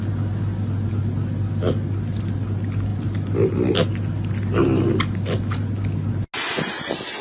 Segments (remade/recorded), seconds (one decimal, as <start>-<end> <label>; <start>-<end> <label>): 0.0-7.2 recorded